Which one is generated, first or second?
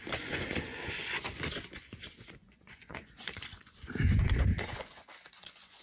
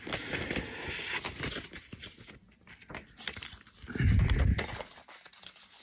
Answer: first